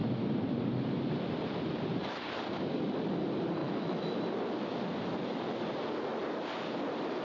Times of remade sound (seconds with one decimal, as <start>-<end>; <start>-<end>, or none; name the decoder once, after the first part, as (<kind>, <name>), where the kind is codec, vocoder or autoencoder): 3.6-4.2 (autoencoder, DAC-VAE)